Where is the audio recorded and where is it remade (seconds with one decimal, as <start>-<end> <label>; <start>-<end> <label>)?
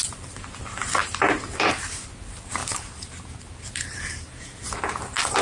0.0-1.0 recorded; 1.0-1.7 remade; 1.7-2.6 recorded; 2.6-4.8 remade; 4.8-5.4 recorded